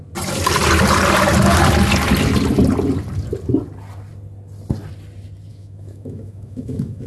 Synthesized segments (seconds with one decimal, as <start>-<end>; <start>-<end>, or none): 5.5-7.1